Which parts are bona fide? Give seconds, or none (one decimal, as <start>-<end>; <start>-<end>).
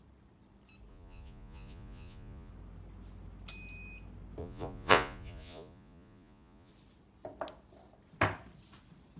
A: 0.0-0.9; 2.5-4.4; 6.7-9.2